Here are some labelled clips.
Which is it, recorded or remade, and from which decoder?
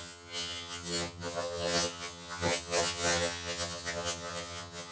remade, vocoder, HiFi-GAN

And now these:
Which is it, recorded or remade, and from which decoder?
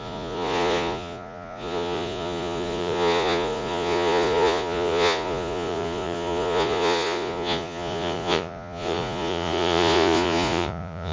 remade, vocoder, Vocos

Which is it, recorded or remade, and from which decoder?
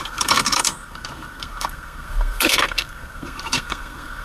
remade, codec, SNAC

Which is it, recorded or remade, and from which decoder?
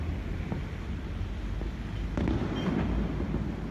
recorded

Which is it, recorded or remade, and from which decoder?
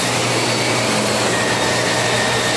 recorded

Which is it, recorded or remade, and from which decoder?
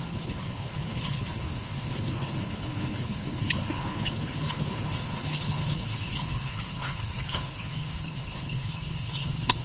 remade, codec, HILCodec